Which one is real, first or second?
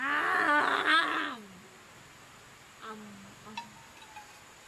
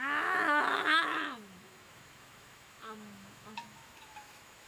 first